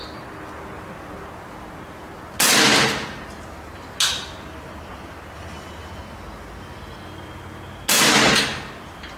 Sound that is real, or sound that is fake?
real